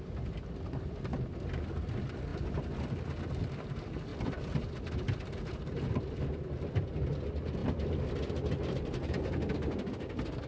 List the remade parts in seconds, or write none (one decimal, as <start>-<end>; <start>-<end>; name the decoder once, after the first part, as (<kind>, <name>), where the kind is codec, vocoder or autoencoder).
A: 2.3-3.5 (vocoder, BigVGAN v2); 4.1-6.2